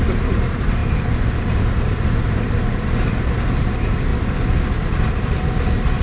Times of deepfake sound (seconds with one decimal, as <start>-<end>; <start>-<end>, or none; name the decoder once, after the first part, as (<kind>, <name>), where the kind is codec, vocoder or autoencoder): 0.0-4.1 (vocoder, BigVGAN v2); 5.1-6.0